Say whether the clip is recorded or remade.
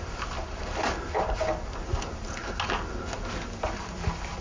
recorded